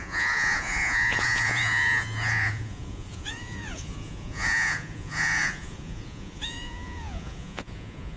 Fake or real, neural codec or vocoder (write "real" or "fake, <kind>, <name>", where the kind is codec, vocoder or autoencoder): fake, vocoder, Vocos